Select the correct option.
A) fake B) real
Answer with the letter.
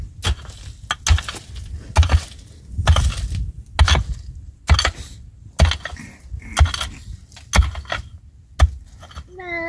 B